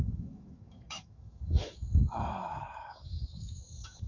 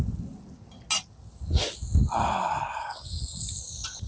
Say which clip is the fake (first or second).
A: first